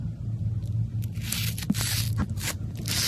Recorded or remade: recorded